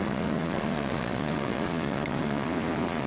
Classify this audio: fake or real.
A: fake